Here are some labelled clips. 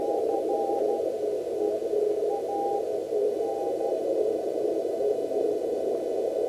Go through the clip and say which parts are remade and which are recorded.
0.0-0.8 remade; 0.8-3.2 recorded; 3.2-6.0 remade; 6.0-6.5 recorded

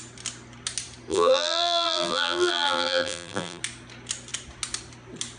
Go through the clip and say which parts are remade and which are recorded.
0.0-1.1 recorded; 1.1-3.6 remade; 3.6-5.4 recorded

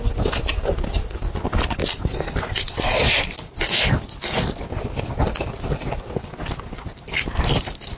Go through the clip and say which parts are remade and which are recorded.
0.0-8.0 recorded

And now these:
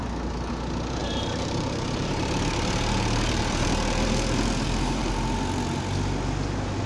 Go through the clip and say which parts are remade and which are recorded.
0.0-1.0 recorded; 1.0-5.1 remade; 5.1-6.9 recorded

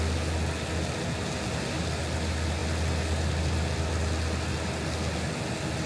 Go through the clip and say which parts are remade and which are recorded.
0.0-5.9 recorded

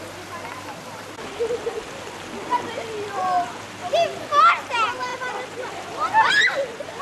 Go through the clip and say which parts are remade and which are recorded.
0.0-7.0 recorded

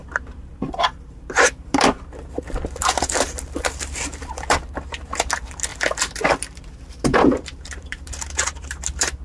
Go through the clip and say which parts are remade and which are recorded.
0.0-5.7 remade; 5.7-6.4 recorded; 6.4-9.2 remade